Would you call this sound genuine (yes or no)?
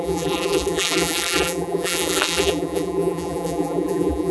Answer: no